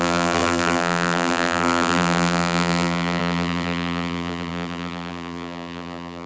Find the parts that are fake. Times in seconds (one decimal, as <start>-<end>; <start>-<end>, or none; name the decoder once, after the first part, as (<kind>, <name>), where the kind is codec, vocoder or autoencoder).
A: 0.0-6.3 (vocoder, BigVGAN v2)